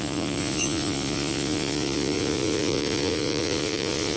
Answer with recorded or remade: remade